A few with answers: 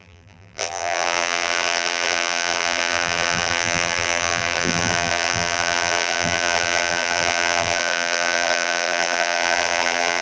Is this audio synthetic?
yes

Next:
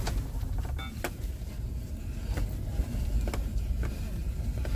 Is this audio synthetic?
no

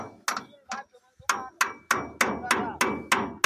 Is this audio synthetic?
no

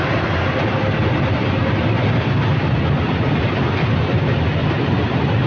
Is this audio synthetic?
no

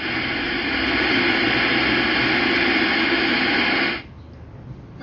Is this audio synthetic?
no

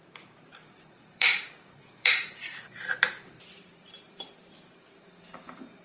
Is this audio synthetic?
yes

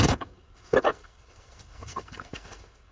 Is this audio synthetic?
yes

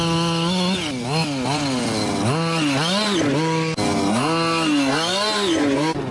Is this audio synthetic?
no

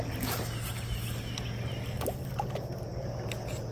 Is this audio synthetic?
no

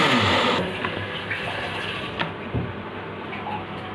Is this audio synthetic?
no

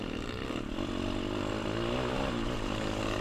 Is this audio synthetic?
no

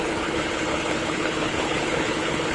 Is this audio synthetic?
yes